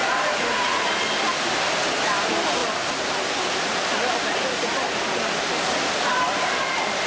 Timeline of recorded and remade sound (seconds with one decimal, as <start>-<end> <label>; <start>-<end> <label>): 0.0-0.8 remade; 0.8-7.1 recorded